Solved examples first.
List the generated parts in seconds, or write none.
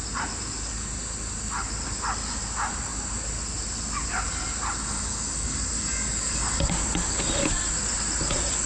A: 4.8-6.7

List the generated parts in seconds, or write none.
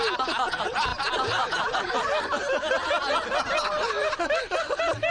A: none